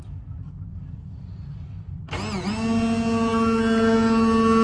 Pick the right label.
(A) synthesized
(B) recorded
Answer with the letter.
B